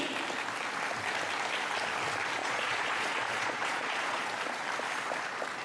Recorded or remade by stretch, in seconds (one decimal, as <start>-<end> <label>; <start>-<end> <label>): 0.0-2.4 recorded; 2.4-4.3 remade; 4.3-5.6 recorded